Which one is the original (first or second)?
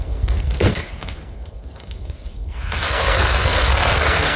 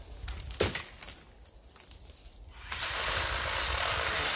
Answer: second